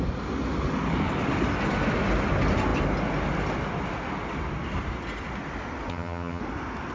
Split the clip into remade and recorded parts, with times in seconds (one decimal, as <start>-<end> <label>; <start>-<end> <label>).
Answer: 0.0-5.9 recorded; 5.9-6.4 remade; 6.4-6.9 recorded